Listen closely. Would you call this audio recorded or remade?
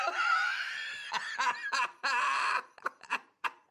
remade